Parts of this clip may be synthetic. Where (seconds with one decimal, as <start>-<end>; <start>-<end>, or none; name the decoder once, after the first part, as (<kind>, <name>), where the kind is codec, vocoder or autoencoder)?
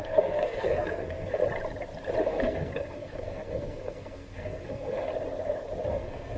0.0-1.4 (codec, SNAC); 2.2-5.1; 5.9-6.4